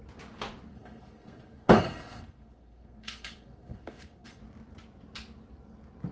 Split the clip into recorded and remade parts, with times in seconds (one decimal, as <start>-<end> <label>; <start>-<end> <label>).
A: 0.0-0.7 recorded; 0.7-4.4 remade; 4.4-6.1 recorded